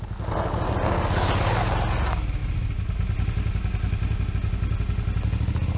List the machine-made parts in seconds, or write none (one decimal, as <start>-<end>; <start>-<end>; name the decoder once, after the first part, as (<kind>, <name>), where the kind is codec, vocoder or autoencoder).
none

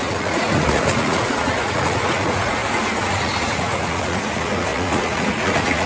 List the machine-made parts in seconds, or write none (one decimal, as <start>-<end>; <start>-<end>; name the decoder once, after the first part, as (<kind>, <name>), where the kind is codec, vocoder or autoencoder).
0.0-5.9 (vocoder, Vocos)